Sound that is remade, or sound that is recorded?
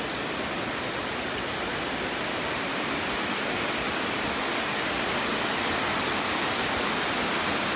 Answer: recorded